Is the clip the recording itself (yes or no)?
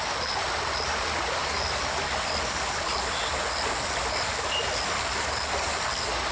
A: yes